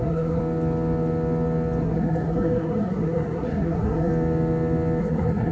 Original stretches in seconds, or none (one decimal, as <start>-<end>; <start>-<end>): 0.4-1.8; 4.1-5.0